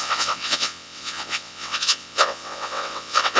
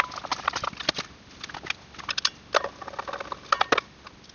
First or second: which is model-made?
first